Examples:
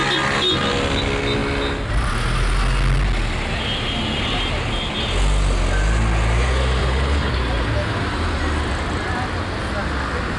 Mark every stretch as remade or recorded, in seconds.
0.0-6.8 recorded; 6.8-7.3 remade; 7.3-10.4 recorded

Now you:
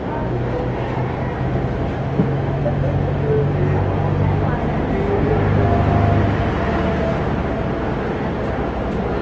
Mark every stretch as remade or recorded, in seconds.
0.0-9.2 recorded